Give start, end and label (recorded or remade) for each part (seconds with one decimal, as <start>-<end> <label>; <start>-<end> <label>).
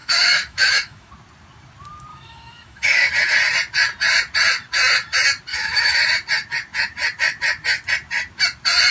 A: 0.0-1.1 remade; 1.1-2.1 recorded; 2.1-3.1 remade; 3.1-5.5 recorded; 5.5-6.0 remade; 6.0-8.9 recorded